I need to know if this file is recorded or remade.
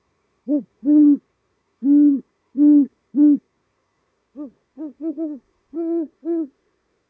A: remade